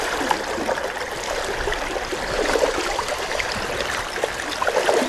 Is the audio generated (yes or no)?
yes